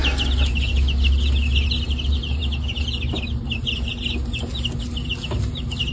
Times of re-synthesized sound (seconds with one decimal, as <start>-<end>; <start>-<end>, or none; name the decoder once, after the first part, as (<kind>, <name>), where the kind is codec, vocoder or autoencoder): none